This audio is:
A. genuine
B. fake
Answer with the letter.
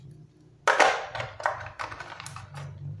A